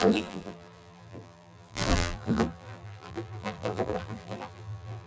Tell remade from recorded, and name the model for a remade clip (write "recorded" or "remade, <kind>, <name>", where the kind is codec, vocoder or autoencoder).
remade, vocoder, BigVGAN v2